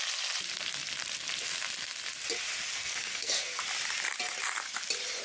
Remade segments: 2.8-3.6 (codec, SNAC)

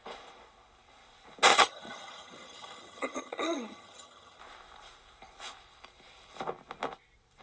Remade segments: 1.5-4.4 (vocoder, HiFi-GAN)

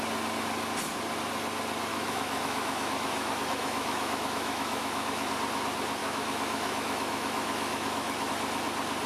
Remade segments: 1.9-5.3 (autoencoder, DAC-VAE); 6.0-8.3

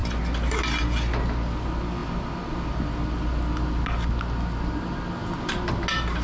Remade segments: none

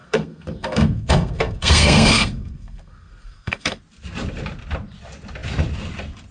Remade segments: 0.0-3.8 (codec, SNAC)

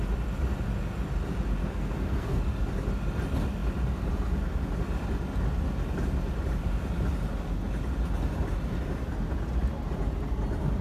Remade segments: 1.6-2.4 (codec, SNAC)